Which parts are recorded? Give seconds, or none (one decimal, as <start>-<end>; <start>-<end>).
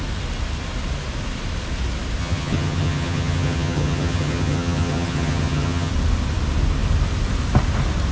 0.0-2.2; 5.9-8.1